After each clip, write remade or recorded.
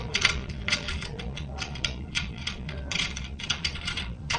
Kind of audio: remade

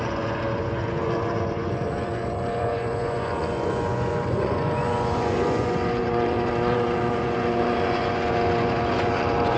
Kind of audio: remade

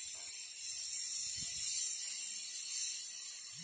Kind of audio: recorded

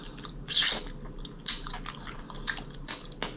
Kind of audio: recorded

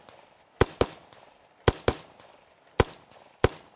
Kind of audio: recorded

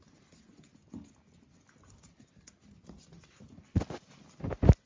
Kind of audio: recorded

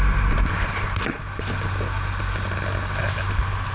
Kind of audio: recorded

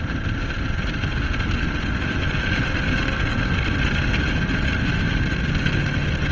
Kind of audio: recorded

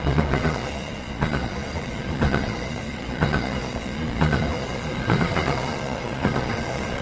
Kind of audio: remade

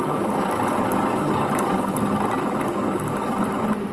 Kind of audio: recorded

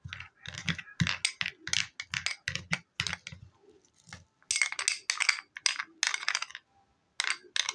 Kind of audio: recorded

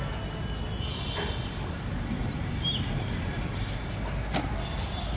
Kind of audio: recorded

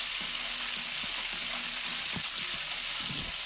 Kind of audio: recorded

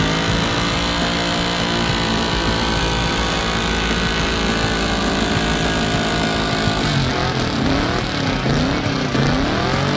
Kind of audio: recorded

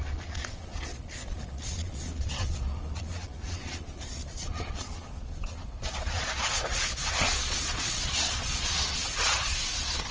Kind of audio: remade